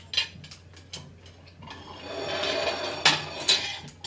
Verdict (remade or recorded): recorded